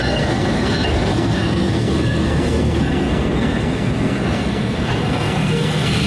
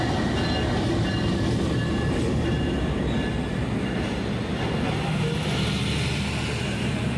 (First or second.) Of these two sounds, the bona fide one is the second